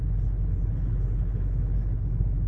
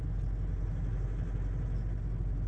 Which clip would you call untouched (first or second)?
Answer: second